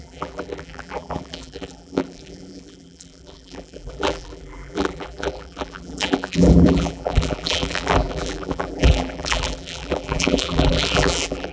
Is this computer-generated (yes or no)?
yes